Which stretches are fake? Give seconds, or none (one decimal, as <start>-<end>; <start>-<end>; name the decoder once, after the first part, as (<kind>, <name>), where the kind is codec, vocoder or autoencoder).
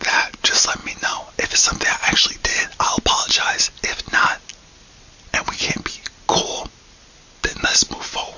0.8-2.8 (vocoder, BigVGAN v2)